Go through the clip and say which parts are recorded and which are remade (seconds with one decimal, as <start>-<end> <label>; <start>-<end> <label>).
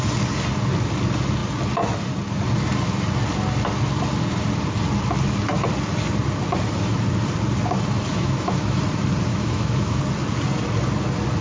0.0-8.1 recorded; 8.1-8.8 remade; 8.8-9.3 recorded; 9.3-10.0 remade; 10.0-11.4 recorded